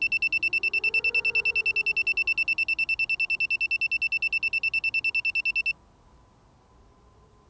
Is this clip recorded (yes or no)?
yes